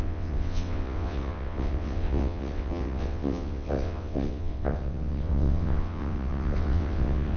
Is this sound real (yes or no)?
no